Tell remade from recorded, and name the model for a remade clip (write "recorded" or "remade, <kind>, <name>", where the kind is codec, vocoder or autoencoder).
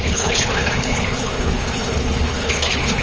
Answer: remade, codec, HILCodec